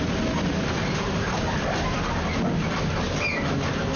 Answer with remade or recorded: recorded